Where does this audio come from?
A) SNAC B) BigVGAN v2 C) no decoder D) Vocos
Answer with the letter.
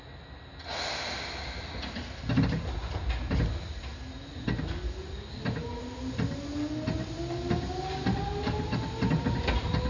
C